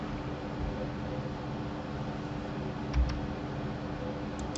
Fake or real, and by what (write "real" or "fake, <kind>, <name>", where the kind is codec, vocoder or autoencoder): real